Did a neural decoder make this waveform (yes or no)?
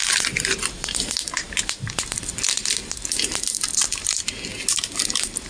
no